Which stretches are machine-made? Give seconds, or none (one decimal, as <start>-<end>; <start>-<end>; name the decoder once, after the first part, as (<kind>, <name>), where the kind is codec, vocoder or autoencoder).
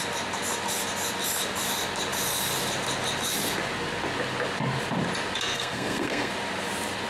5.5-6.3 (codec, SNAC)